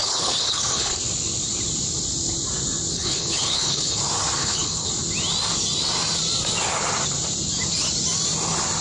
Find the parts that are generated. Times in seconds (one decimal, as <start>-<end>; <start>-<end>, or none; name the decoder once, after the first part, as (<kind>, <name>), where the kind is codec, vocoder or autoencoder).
0.0-1.0 (codec, HILCodec); 2.9-4.0; 4.4-4.9